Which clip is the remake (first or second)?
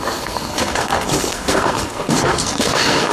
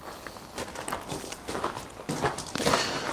first